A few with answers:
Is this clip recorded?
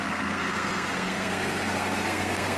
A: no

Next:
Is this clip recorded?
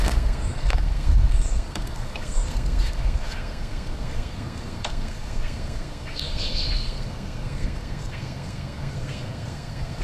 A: no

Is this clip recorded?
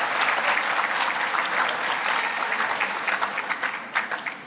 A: yes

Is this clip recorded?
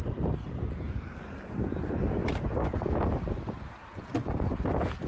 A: yes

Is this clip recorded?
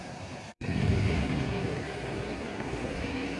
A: no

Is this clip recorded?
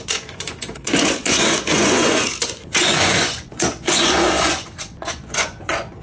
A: no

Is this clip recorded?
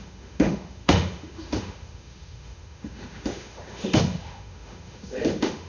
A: no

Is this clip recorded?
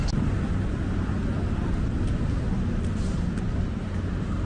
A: yes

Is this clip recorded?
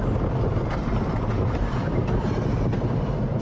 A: yes